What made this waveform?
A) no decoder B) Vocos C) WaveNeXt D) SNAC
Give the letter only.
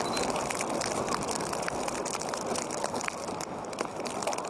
A